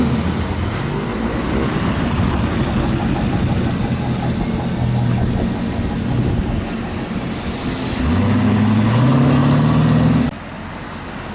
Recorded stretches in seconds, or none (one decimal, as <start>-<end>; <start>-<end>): 0.0-11.3